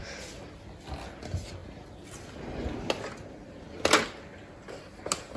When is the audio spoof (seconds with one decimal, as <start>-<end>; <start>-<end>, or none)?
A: none